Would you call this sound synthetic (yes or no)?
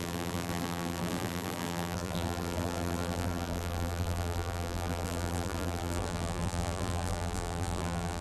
yes